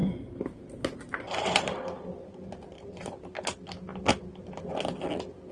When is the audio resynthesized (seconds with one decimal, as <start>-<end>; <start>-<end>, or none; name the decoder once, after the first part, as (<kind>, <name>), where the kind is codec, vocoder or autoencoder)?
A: 0.0-3.3 (vocoder, BigVGAN v2)